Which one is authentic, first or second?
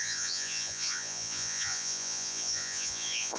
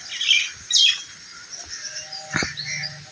second